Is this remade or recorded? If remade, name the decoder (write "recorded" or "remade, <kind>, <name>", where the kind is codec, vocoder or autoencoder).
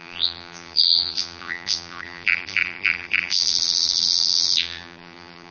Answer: remade, vocoder, BigVGAN v2